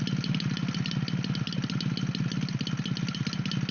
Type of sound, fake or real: real